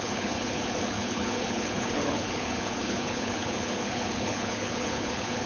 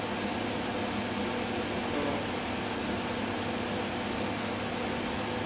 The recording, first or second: second